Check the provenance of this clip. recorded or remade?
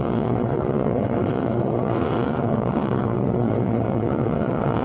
remade